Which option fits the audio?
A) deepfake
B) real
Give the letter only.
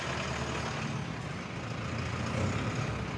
B